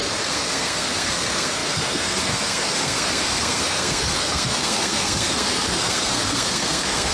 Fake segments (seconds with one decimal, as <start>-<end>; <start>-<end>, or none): 0.0-7.1